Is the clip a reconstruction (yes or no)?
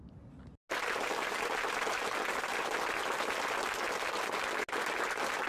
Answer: no